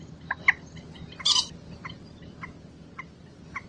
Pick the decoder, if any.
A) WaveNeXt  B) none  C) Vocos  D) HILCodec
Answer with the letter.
B